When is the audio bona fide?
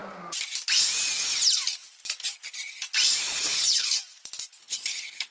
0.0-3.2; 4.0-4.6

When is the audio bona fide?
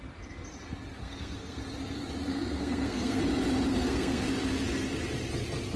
0.0-1.0; 1.6-2.3; 3.2-3.7; 4.3-5.8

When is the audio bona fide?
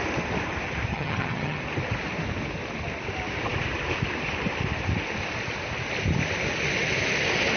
0.0-0.9; 1.6-7.6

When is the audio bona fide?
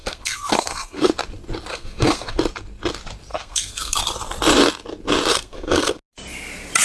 1.1-1.7; 2.4-3.3; 4.0-5.3; 6.0-6.8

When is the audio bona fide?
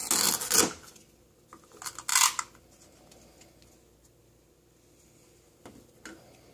0.0-6.5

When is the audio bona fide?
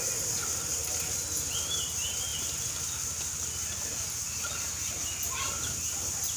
0.0-6.4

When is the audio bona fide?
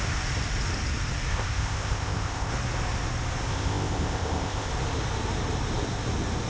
0.0-1.3; 2.5-3.5; 4.7-6.5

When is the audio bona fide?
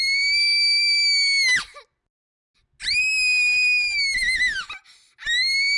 0.0-5.8